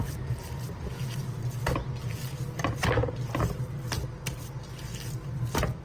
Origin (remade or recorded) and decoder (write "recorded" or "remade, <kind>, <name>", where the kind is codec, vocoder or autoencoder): recorded